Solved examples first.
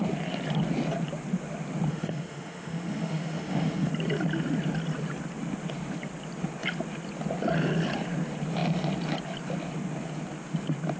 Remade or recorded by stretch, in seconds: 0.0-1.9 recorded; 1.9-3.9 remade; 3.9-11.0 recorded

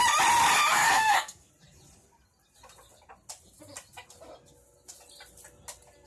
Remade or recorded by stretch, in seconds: 0.0-0.7 recorded; 0.7-1.5 remade; 1.5-6.1 recorded